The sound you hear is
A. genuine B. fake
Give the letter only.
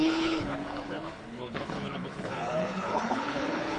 B